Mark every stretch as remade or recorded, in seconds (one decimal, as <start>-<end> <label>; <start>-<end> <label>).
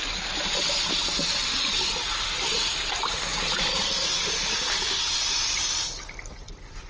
0.0-2.0 recorded; 2.0-3.7 remade; 3.7-6.9 recorded